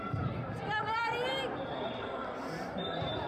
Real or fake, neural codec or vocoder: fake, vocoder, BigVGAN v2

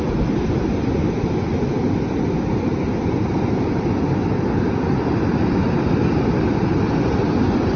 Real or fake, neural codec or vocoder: real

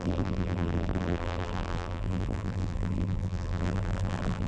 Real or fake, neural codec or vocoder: fake, vocoder, BigVGAN v2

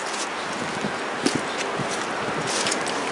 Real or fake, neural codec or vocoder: real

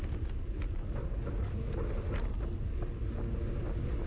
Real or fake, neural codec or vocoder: real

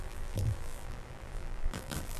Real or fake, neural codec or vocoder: fake, vocoder, BigVGAN v2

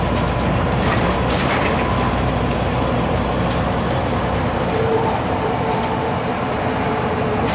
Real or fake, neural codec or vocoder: fake, vocoder, BigVGAN v2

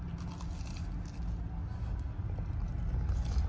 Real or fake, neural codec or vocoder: real